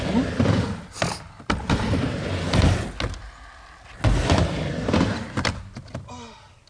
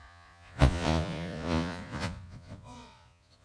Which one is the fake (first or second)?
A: second